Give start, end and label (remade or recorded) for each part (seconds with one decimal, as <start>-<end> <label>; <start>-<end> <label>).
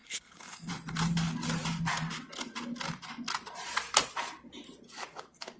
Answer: 0.0-0.7 remade; 0.7-5.6 recorded